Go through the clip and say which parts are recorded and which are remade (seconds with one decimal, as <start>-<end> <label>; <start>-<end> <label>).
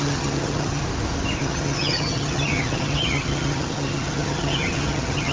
0.0-0.8 remade; 0.8-1.4 recorded; 1.4-5.3 remade